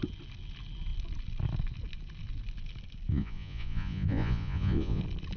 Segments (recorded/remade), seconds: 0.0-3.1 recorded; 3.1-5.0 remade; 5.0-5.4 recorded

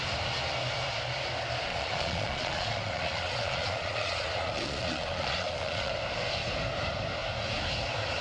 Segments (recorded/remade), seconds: 0.0-1.7 recorded; 1.7-5.9 remade; 5.9-8.2 recorded

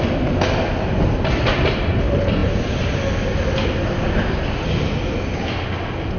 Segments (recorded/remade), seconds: 0.0-6.2 recorded

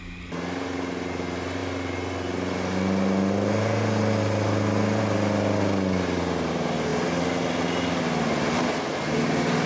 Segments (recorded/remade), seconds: 0.0-9.7 recorded

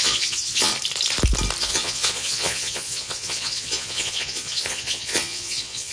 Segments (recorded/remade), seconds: 0.0-0.7 remade; 0.7-1.6 recorded; 1.6-5.9 remade

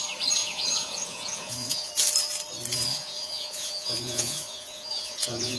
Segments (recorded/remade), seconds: 0.0-0.4 recorded; 0.4-1.9 remade; 1.9-2.9 recorded; 2.9-5.6 remade

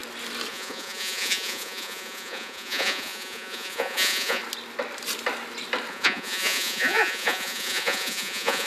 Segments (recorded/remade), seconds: 0.0-0.5 recorded; 0.5-4.4 remade; 4.4-5.9 recorded; 5.9-8.7 remade